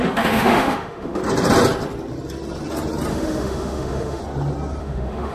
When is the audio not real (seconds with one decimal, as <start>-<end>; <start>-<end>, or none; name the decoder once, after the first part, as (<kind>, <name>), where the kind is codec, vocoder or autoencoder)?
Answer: 0.0-1.2 (autoencoder, DAC-VAE); 3.1-4.2; 4.8-5.3